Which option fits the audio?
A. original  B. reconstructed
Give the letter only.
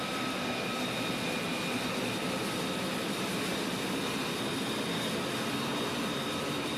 A